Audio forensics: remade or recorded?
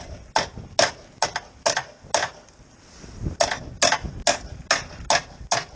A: recorded